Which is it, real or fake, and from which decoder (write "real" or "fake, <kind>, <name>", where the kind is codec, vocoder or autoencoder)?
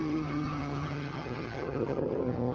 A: fake, vocoder, HiFi-GAN